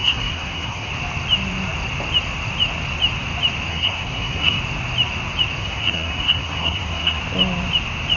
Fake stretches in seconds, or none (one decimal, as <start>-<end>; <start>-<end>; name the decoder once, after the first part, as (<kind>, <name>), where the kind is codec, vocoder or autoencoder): 0.0-0.9 (codec, SNAC); 3.7-4.6; 5.6-7.2